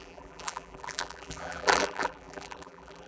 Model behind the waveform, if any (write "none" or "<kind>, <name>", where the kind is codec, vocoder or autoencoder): vocoder, BigVGAN v2